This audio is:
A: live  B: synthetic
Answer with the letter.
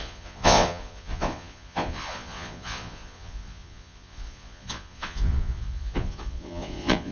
B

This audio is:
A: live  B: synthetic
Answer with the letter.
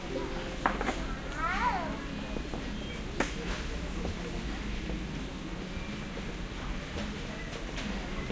A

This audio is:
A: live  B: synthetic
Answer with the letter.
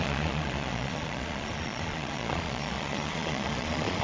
B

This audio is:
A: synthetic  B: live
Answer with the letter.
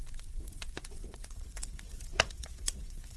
A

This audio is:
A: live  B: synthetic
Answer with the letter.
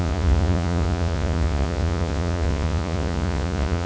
B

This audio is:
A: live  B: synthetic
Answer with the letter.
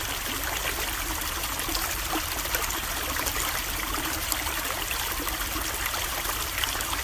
A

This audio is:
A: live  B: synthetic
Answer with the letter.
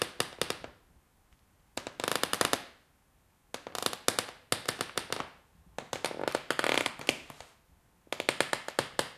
A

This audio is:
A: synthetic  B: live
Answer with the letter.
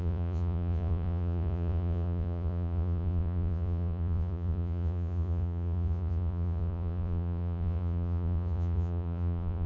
A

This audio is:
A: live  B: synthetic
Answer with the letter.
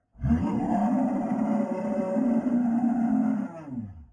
A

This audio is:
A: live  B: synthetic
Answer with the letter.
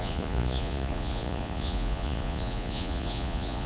B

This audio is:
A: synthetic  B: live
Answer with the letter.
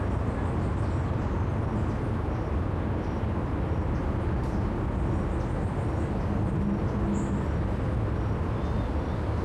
B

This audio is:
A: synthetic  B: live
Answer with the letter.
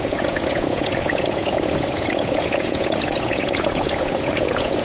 A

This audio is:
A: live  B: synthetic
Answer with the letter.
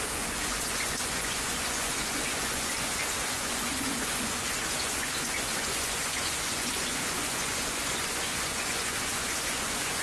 B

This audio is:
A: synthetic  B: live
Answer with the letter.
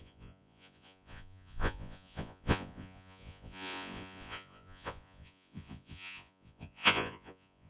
A